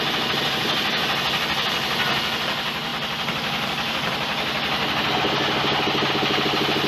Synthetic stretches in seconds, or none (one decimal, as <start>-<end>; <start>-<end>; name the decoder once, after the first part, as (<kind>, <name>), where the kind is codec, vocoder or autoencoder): none